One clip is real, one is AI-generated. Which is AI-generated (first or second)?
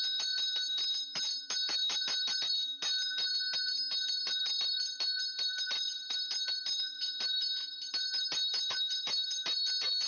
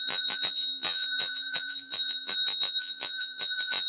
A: second